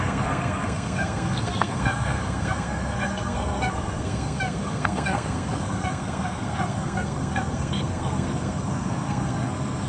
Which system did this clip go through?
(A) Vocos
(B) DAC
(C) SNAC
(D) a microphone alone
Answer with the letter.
C